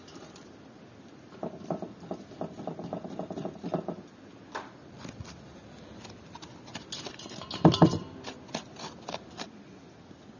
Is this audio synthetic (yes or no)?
no